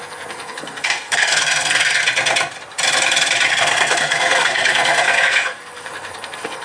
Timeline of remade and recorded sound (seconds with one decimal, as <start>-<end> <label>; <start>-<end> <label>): 0.0-2.0 remade; 2.0-3.5 recorded; 3.5-6.6 remade